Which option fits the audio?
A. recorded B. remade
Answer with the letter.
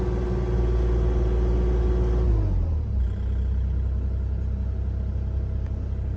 A